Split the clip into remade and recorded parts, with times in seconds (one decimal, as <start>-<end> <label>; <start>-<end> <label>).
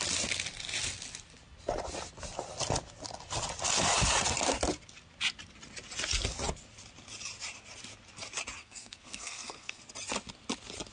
0.0-8.6 recorded; 8.6-9.8 remade; 9.8-10.9 recorded